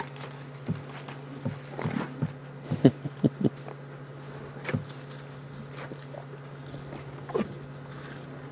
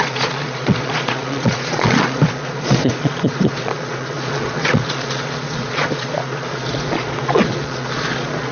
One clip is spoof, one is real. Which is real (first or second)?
first